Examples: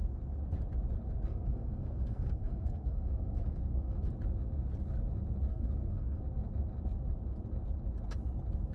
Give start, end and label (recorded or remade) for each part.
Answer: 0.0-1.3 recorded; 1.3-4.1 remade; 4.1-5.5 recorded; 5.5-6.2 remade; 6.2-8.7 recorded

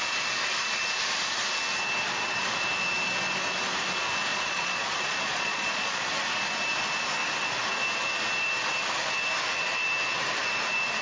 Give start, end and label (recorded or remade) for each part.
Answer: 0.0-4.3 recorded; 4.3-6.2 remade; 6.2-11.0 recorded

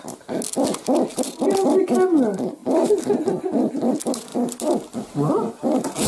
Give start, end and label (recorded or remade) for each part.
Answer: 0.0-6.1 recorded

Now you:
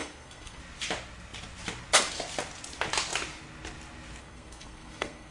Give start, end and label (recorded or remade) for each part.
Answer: 0.0-0.6 remade; 0.6-4.2 recorded; 4.2-5.3 remade

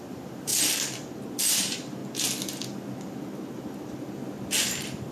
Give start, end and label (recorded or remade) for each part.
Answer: 0.0-0.5 remade; 0.5-1.6 recorded; 1.6-2.0 remade; 2.0-4.6 recorded; 4.6-5.1 remade

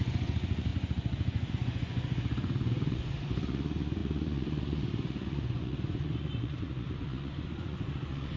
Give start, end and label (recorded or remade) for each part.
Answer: 0.0-8.4 remade